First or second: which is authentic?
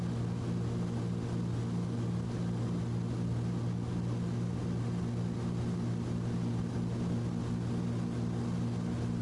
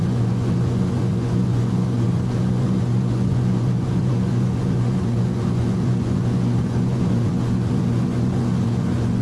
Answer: first